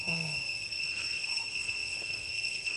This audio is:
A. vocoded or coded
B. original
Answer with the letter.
A